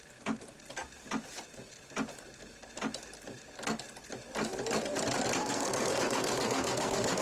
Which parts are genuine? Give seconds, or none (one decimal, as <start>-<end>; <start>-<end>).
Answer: 0.0-5.4